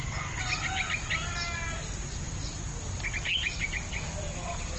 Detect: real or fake real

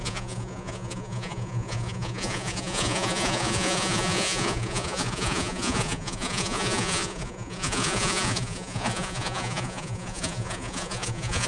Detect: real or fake fake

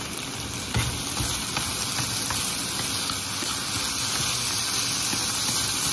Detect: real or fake real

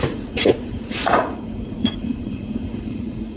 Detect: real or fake fake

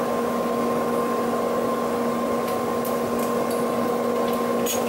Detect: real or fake real